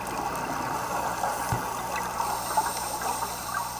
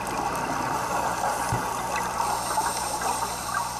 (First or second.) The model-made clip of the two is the first